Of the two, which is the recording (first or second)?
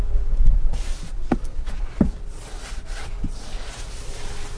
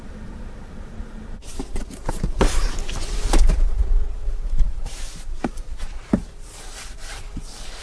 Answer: first